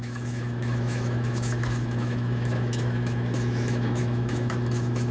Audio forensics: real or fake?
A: fake